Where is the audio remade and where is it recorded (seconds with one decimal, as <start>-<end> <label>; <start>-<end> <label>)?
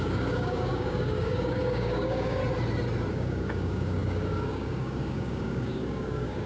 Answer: 0.0-2.4 remade; 2.4-3.1 recorded; 3.1-6.5 remade